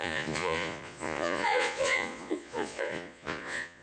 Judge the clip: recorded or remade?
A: remade